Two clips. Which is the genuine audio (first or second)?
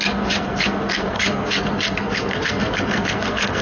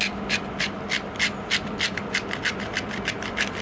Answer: second